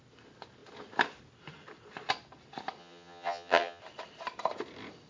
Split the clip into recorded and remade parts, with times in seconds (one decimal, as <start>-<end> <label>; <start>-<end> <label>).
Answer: 0.0-2.8 recorded; 2.8-3.8 remade; 3.8-5.1 recorded